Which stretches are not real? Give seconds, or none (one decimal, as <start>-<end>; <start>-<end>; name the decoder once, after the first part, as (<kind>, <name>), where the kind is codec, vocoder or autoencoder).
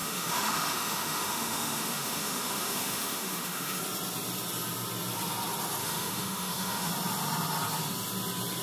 0.0-3.8 (autoencoder, DAC-VAE); 5.8-6.9